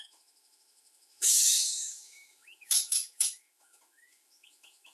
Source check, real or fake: fake